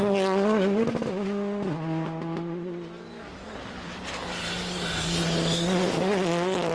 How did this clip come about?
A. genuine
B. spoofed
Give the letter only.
A